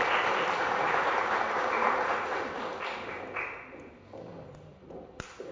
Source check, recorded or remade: recorded